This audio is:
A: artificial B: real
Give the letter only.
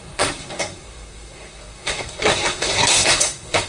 A